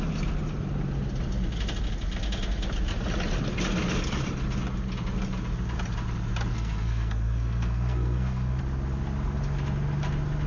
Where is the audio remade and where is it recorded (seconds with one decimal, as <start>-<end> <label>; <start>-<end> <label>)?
0.0-6.5 recorded; 6.5-8.6 remade; 8.6-10.5 recorded